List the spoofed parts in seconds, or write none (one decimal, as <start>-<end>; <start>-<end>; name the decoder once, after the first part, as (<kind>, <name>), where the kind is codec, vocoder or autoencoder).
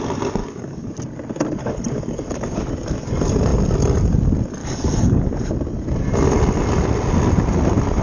0.4-0.9 (codec, DAC); 1.6-2.7; 4.6-5.2